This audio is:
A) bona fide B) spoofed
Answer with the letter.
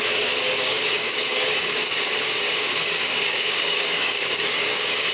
B